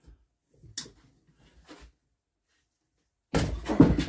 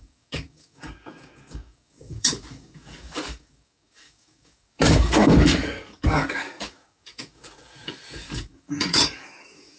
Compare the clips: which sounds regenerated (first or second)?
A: second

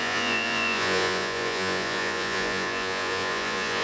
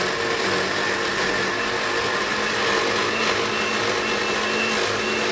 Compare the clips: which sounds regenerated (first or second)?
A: first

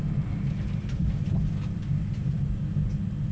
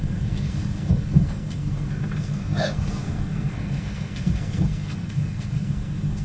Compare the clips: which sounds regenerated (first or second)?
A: second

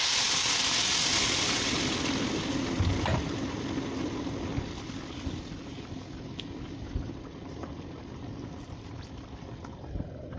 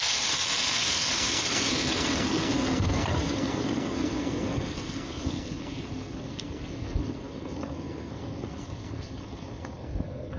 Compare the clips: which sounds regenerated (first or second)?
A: second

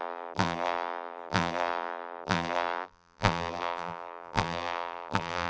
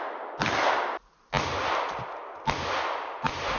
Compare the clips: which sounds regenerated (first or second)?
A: first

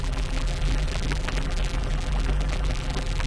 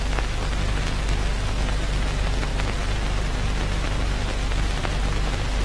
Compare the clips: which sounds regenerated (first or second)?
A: first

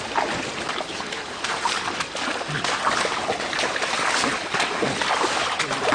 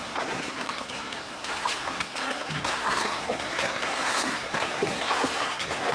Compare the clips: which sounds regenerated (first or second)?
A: second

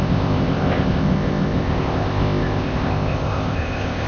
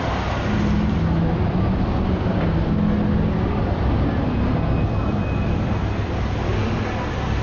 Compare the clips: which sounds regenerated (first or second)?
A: first